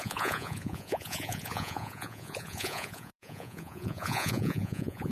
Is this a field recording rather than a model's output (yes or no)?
no